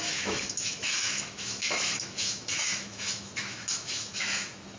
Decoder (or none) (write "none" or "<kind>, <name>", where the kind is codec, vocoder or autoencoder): autoencoder, DAC-VAE